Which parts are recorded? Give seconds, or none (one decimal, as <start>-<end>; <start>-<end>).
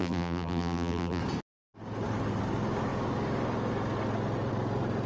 1.2-5.1